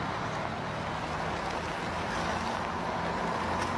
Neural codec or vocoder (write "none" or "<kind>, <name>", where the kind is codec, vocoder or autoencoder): none